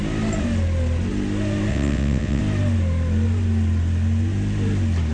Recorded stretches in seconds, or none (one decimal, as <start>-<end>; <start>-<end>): 0.0-1.7; 2.4-5.1